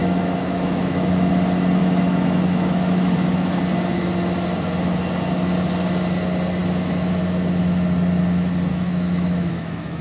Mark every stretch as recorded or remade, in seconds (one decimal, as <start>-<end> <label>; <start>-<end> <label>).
0.0-1.3 remade; 1.3-1.8 recorded; 1.8-3.6 remade; 3.6-8.7 recorded; 8.7-10.0 remade